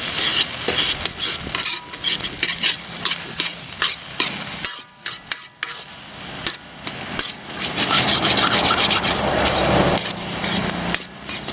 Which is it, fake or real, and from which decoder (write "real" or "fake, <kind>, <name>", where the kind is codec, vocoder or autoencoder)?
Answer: real